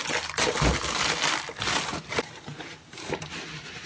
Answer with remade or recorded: recorded